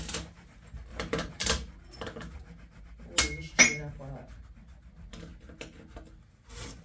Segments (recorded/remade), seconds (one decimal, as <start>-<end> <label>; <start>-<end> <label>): 0.0-0.9 recorded; 0.9-1.5 remade; 1.5-6.8 recorded